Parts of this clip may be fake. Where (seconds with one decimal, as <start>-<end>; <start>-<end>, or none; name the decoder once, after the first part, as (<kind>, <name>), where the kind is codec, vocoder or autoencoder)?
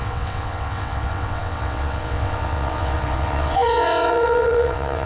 0.0-5.1 (vocoder, WaveNeXt)